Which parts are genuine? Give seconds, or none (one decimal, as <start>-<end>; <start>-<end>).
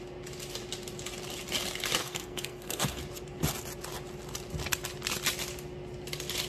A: 0.0-2.0; 3.0-6.5